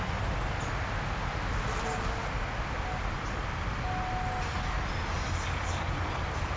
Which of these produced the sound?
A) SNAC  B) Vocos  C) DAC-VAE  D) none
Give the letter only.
D